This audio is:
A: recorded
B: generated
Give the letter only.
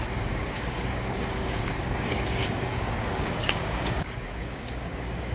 B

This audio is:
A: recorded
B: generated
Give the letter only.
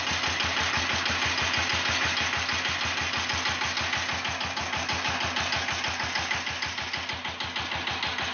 A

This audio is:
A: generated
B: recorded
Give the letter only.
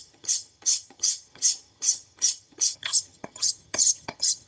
A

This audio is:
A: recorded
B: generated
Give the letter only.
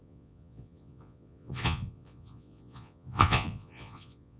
B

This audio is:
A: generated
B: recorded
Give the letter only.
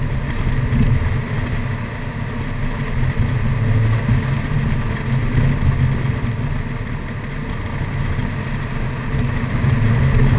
B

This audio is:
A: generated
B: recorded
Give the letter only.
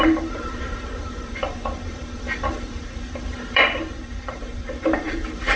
A